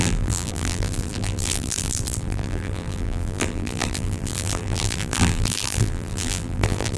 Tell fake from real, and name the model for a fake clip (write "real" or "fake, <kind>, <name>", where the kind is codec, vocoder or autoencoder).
fake, vocoder, BigVGAN v2